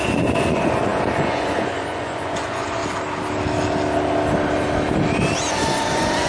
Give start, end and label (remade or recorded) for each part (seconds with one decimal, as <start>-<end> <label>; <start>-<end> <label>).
0.0-2.8 remade; 2.8-5.5 recorded; 5.5-6.3 remade